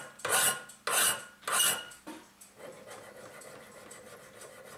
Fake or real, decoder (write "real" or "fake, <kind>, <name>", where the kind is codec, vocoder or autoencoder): real